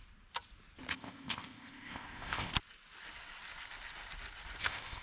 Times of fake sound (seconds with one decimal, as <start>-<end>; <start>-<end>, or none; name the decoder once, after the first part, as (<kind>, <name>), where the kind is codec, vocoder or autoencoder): 0.9-2.5 (codec, ZipCodec); 4.6-5.0